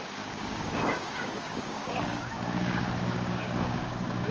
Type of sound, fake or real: fake